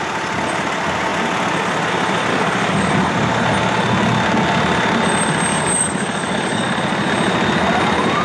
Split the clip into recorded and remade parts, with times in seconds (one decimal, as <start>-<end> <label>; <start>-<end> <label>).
0.0-2.3 recorded; 2.3-2.9 remade; 2.9-5.5 recorded; 5.5-6.7 remade; 6.7-8.2 recorded